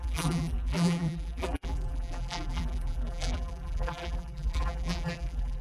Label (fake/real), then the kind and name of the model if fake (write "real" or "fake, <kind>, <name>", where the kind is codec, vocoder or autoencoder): fake, vocoder, BigVGAN v2